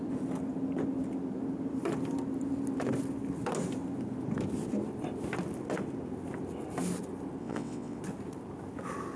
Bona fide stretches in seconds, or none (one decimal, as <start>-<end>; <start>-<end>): 0.0-7.4; 8.0-9.2